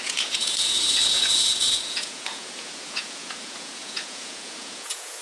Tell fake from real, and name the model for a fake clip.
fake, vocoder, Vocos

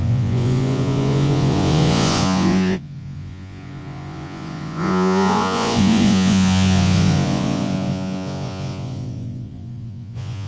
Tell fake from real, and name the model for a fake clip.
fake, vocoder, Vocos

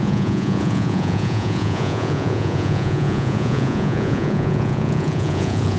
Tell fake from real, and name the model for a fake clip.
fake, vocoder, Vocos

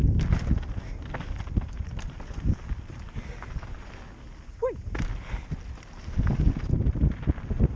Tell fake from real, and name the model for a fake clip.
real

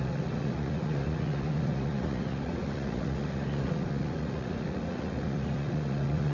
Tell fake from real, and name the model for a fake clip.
fake, vocoder, Vocos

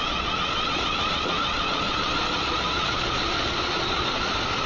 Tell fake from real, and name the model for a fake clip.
fake, vocoder, Vocos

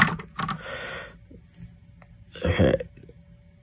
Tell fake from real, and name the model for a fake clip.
real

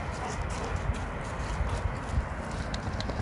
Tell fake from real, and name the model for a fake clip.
real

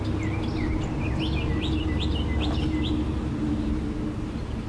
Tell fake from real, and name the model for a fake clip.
real